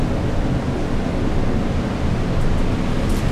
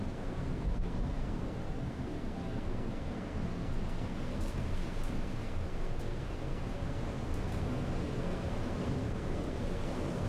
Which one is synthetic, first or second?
second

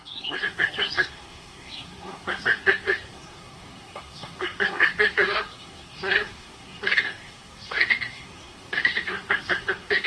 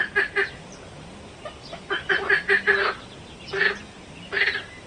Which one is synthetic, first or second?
first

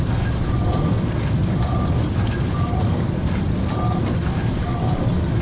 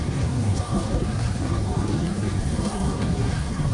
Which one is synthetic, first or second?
second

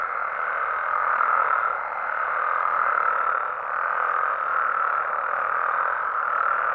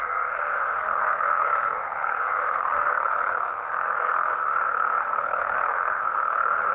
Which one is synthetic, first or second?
second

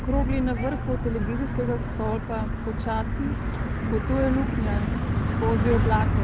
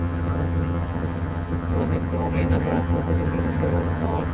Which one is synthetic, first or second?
second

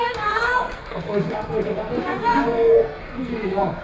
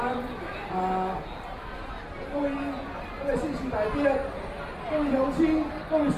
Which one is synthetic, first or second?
first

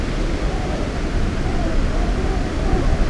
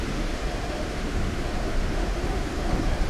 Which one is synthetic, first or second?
second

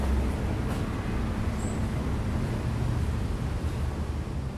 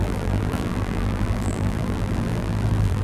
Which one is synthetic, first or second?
second